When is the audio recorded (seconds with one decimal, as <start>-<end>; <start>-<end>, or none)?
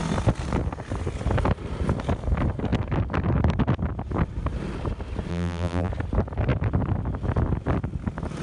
0.0-5.3; 5.9-8.4